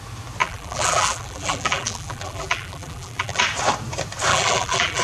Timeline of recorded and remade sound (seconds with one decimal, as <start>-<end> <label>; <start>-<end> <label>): 0.0-0.4 recorded; 0.4-3.4 remade; 3.4-4.3 recorded; 4.3-5.0 remade